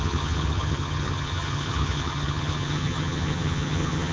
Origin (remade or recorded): remade